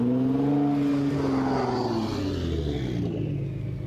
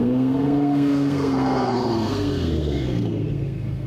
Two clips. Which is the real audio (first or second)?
first